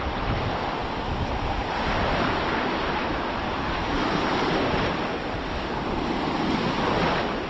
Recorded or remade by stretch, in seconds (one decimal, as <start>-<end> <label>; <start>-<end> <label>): 0.0-7.5 recorded